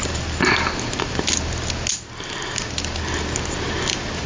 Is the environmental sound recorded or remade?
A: recorded